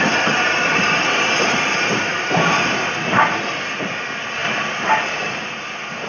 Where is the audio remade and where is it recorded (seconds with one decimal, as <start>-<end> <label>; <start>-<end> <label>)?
0.0-6.1 recorded